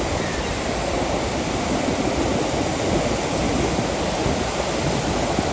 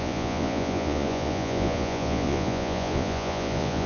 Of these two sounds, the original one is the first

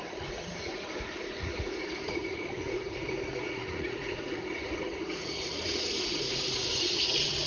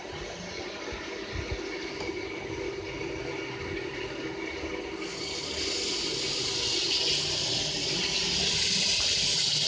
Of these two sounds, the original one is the second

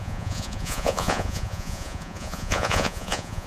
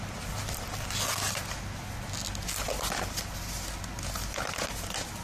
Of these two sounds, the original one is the second